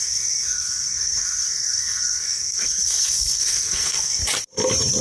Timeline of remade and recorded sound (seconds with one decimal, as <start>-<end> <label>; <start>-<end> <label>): 0.0-4.2 remade; 4.2-5.0 recorded